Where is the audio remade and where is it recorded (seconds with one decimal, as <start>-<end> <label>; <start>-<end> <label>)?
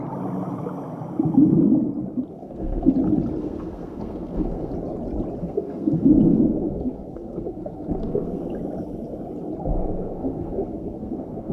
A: 0.0-2.3 recorded; 2.3-2.9 remade; 2.9-3.4 recorded; 3.4-4.7 remade; 4.7-5.4 recorded; 5.4-8.5 remade; 8.5-9.7 recorded; 9.7-11.5 remade